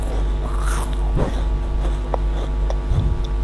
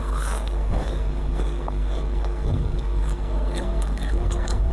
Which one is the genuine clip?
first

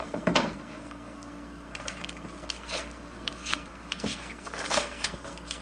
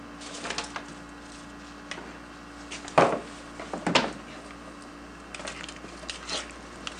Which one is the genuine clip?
second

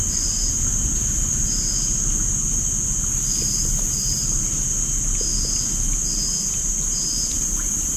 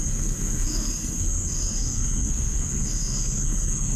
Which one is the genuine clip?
first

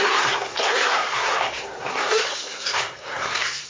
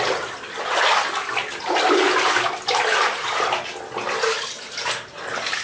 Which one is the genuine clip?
second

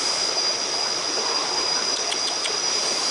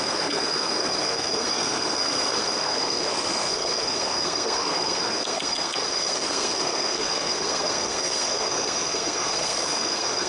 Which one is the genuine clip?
first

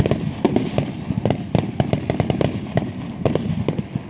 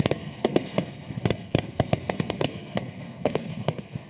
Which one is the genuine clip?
first